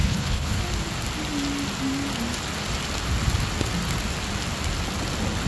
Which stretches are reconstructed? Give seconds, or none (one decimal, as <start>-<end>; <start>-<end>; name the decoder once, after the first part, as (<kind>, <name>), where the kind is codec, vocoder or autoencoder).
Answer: 0.0-0.6 (codec, HILCodec)